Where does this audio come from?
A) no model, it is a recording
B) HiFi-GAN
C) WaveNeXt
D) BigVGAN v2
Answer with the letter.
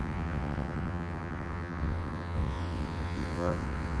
C